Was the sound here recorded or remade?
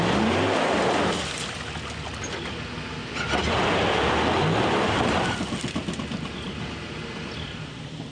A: recorded